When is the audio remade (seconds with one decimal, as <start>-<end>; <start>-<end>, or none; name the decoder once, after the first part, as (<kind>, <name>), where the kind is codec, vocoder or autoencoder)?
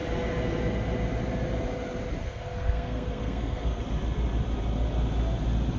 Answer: 2.2-3.8 (codec, SNAC)